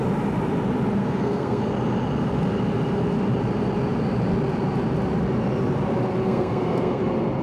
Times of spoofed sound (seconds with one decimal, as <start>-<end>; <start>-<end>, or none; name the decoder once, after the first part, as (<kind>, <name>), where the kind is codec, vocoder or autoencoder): 1.0-1.6 (codec, SNAC); 6.2-7.0